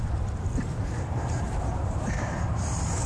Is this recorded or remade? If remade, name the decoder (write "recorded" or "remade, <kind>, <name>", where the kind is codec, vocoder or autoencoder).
remade, vocoder, BigVGAN v2